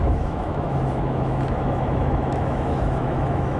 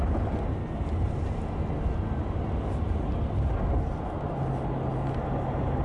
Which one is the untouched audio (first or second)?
second